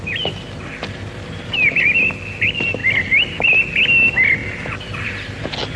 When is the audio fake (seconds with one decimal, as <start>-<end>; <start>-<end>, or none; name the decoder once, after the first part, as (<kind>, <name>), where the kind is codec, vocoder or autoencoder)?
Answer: 4.4-5.1 (vocoder, BigVGAN v2)